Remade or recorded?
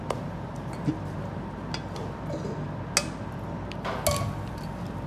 recorded